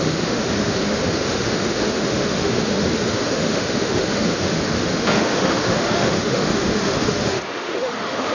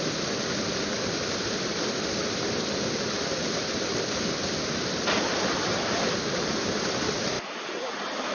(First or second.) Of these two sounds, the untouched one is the second